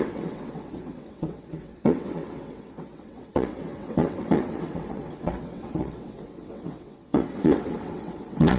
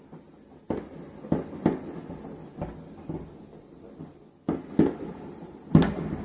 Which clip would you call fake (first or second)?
first